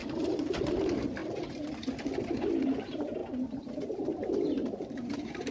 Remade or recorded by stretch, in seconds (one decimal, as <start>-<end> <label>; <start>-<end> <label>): 0.0-1.2 remade; 1.2-2.6 recorded; 2.6-5.5 remade